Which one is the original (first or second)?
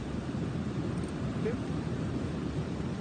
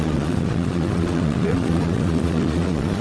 first